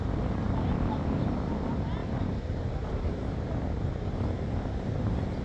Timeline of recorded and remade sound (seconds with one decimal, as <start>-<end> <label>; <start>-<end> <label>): 0.0-2.0 recorded; 2.0-5.4 remade